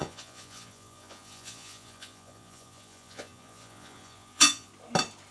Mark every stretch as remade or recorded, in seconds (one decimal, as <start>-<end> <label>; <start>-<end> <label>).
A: 0.0-4.7 remade; 4.7-5.3 recorded